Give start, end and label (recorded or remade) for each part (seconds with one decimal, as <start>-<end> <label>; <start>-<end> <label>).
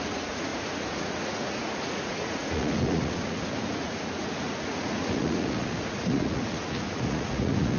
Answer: 0.0-7.8 remade